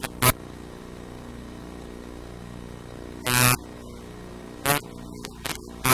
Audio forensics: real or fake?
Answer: real